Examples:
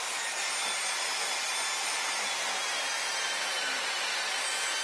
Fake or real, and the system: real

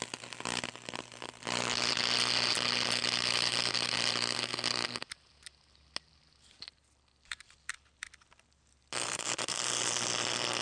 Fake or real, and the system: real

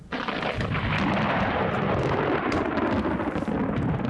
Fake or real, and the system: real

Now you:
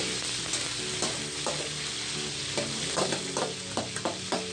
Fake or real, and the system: real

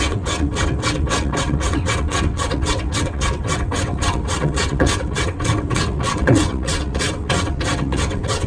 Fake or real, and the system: fake, vocoder, WaveNeXt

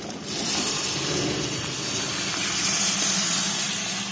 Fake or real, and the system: real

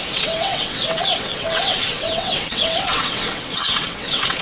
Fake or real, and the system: fake, vocoder, WaveNeXt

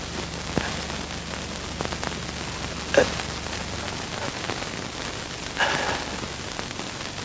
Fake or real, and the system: real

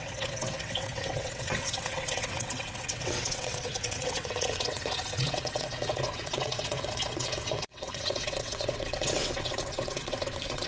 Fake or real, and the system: fake, vocoder, WaveNeXt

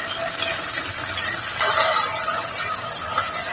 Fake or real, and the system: real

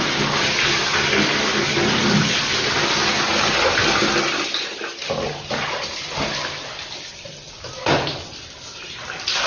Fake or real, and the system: real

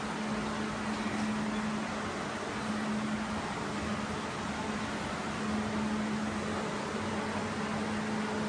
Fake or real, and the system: real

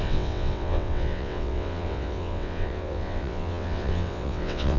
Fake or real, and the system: fake, vocoder, WaveNeXt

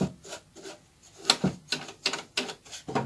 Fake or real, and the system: real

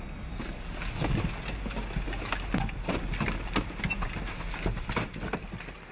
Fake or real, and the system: real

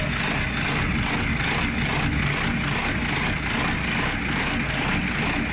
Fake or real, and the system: real